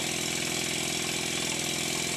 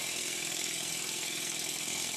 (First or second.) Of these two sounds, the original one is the first